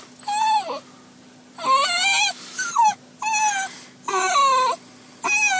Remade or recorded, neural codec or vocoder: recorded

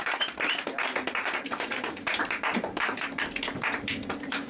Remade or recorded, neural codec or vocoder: remade, vocoder, BigVGAN v2